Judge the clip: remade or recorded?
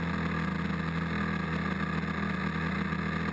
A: recorded